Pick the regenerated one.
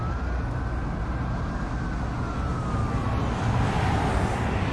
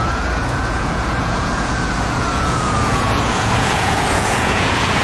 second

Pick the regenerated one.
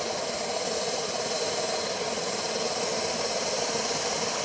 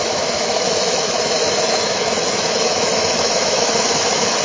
second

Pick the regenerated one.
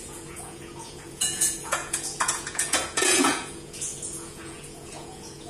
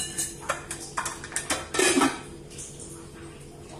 first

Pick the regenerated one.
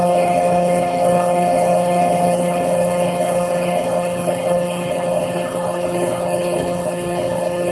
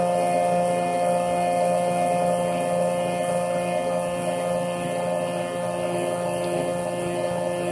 first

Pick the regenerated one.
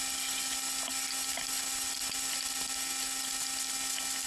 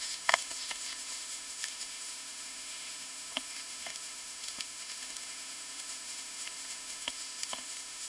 second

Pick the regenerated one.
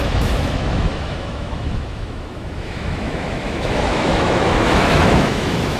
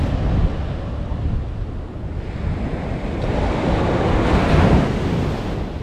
first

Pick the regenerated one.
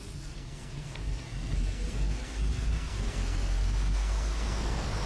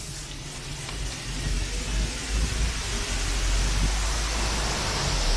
first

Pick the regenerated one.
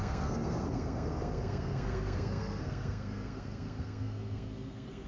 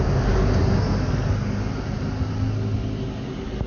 first